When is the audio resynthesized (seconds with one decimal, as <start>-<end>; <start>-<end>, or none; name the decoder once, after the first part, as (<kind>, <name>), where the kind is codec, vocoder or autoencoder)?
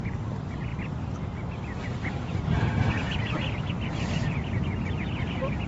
none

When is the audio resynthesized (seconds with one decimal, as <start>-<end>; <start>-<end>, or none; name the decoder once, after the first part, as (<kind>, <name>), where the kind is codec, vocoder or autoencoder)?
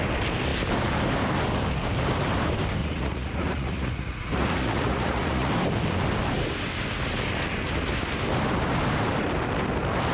2.8-5.5 (vocoder, Vocos)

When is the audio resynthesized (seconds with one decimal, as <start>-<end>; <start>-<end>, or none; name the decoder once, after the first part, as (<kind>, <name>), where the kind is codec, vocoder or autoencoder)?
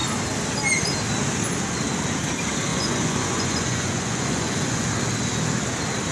2.7-4.9 (vocoder, Vocos)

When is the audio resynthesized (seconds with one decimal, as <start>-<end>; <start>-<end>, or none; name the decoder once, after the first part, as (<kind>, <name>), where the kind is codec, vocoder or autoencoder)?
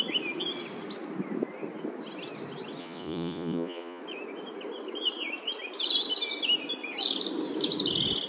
2.8-4.0 (vocoder, Vocos)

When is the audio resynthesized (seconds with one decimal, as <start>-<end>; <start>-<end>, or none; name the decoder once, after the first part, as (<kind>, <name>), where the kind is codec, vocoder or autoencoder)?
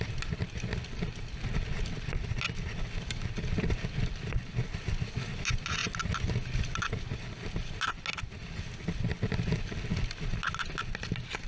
none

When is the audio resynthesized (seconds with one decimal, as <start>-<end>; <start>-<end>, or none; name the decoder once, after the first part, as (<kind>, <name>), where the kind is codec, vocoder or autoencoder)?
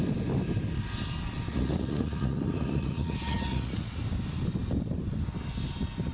1.5-4.0 (vocoder, Vocos)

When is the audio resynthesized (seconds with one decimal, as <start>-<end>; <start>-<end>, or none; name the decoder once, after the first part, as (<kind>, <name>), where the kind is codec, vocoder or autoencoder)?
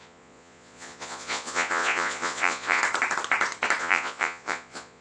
0.0-2.8 (vocoder, Vocos); 3.8-5.0